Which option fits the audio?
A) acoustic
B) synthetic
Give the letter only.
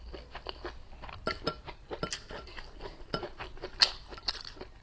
A